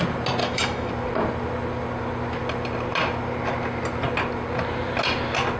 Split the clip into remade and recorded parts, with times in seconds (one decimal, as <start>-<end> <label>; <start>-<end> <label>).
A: 0.0-0.4 recorded; 0.4-0.9 remade; 0.9-5.6 recorded